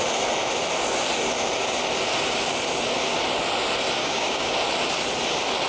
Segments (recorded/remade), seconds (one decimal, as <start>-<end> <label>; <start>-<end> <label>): 0.0-4.0 recorded; 4.0-4.5 remade; 4.5-5.7 recorded